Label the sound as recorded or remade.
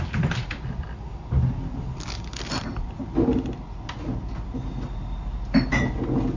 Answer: recorded